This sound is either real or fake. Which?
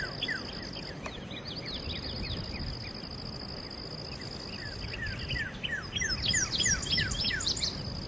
real